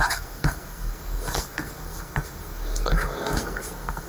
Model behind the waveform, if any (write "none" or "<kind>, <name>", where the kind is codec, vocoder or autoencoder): codec, SNAC